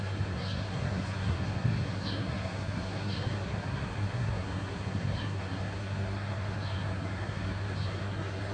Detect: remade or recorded remade